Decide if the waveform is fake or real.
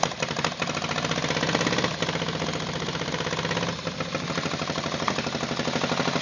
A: real